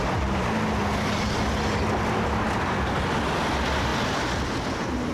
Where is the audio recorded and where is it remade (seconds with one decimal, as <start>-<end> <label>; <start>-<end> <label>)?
0.0-5.1 recorded